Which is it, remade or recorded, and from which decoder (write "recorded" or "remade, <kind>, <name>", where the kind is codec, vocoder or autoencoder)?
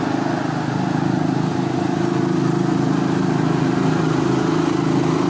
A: recorded